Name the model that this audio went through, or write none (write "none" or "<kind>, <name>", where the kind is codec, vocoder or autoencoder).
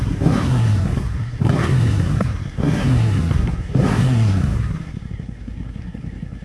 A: codec, SNAC